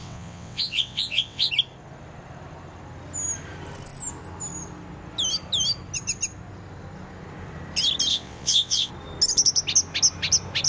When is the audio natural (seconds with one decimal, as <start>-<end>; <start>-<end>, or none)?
1.5-8.1; 8.9-10.7